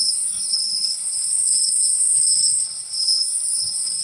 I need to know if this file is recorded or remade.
remade